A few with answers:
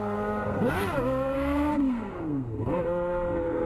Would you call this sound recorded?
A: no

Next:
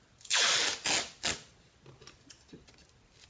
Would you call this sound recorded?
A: yes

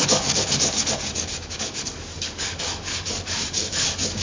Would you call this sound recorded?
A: no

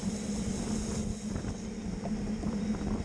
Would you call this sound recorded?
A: yes